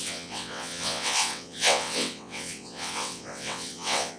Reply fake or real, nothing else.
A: fake